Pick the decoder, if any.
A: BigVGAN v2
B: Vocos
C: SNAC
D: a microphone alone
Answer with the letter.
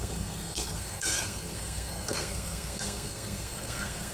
C